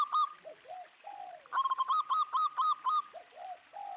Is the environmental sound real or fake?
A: real